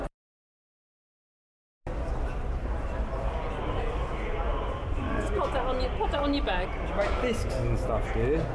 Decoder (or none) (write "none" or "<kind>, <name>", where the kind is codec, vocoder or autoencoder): none